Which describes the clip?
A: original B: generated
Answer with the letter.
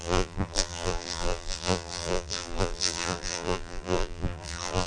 B